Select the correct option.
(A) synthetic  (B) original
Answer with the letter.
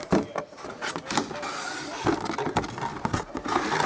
B